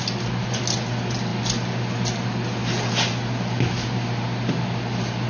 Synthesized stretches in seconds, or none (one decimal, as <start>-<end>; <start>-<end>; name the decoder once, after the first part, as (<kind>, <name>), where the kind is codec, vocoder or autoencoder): none